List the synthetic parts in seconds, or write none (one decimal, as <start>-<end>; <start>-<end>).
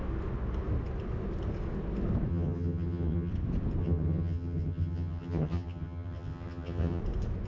2.3-3.3; 3.8-7.0